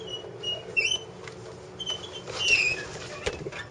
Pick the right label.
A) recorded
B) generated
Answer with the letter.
A